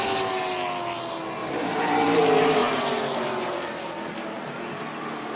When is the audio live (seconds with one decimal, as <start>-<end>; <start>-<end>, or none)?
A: 0.0-1.4; 2.2-2.6; 4.4-5.4

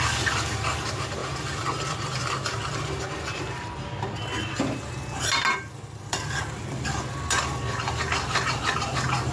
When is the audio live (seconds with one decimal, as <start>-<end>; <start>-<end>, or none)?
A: 0.0-1.2; 3.0-4.3; 8.7-9.3